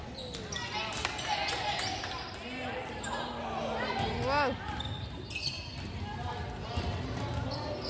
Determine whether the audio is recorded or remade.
recorded